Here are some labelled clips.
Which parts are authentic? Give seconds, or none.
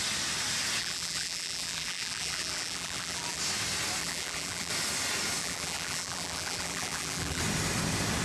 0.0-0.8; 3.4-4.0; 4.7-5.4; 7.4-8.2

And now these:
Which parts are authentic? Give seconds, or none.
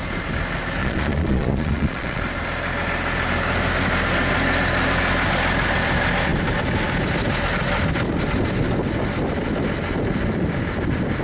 0.0-0.8; 2.2-11.2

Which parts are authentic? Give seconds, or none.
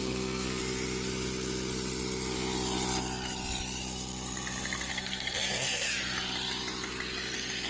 0.6-4.9; 5.9-7.7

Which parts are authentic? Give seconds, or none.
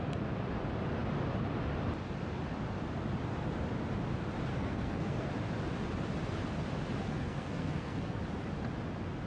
0.0-4.5; 5.3-7.0; 8.2-9.3